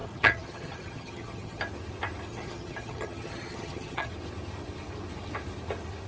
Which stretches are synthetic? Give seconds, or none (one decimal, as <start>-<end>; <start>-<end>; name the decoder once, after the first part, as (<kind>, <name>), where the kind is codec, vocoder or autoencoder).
0.0-1.6 (vocoder, HiFi-GAN); 2.3-4.1